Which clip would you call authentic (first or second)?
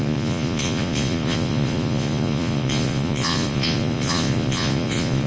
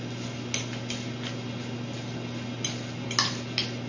second